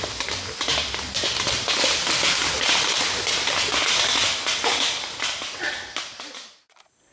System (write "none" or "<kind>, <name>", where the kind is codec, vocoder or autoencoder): none